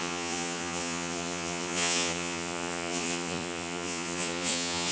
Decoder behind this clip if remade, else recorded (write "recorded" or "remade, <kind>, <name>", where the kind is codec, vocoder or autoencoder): remade, vocoder, Vocos